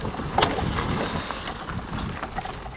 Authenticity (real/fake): real